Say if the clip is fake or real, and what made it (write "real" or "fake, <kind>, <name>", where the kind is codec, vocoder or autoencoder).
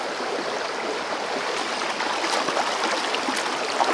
real